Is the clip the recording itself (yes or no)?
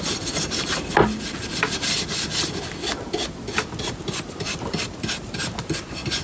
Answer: yes